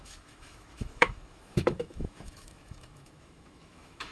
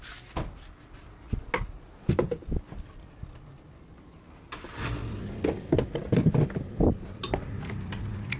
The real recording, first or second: second